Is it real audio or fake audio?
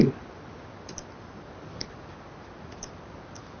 real